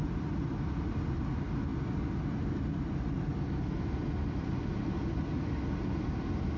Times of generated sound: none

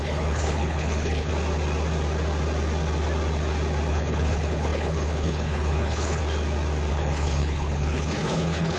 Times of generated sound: 0.0-1.3 (codec, HILCodec); 3.9-6.2; 6.9-8.8

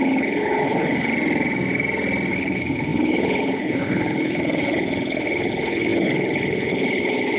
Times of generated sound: 0.0-1.1 (codec, HILCodec); 2.3-7.4

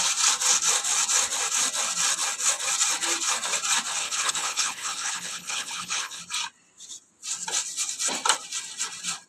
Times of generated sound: 4.0-6.2 (codec, HILCodec)

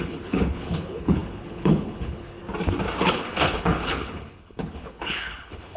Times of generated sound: 0.0-2.4 (codec, HILCodec); 3.0-5.8

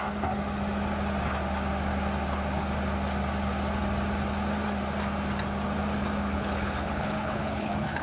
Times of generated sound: 6.3-8.0 (codec, HILCodec)

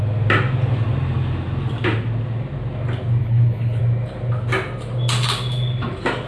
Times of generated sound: 3.2-3.8 (codec, HILCodec)

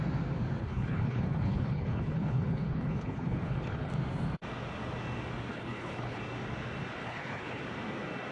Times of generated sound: 0.6-3.9 (codec, HILCodec); 5.5-6.2; 7.0-7.6